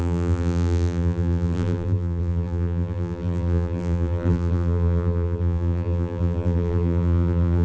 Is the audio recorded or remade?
remade